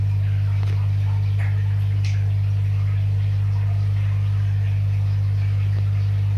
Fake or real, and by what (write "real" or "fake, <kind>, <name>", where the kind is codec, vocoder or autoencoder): fake, vocoder, BigVGAN v2